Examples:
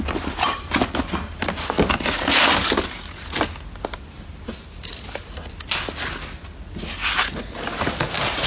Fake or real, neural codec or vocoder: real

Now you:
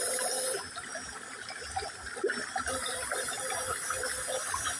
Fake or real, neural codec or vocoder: real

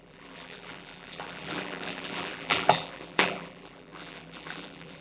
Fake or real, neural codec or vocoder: fake, vocoder, BigVGAN v2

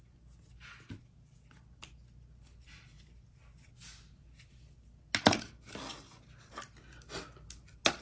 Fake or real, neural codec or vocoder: real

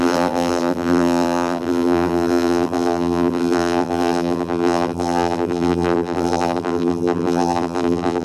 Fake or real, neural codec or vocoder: fake, vocoder, BigVGAN v2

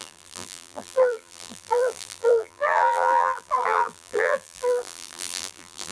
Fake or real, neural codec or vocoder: fake, vocoder, BigVGAN v2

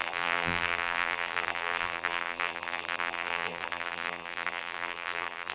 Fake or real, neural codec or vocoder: fake, vocoder, BigVGAN v2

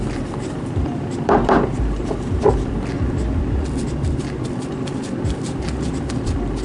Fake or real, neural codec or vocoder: fake, vocoder, BigVGAN v2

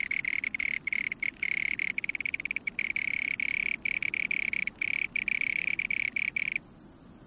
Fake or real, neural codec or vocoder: real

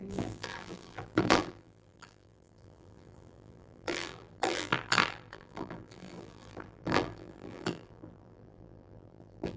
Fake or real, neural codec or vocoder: fake, vocoder, BigVGAN v2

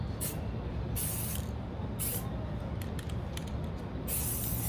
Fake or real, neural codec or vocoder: real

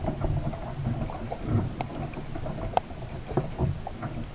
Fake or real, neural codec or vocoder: real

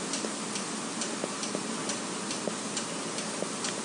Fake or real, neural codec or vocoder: real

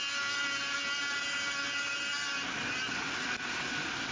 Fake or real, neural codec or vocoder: real